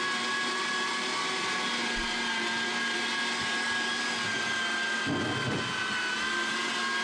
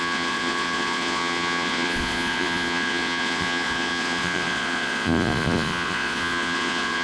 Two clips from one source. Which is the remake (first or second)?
second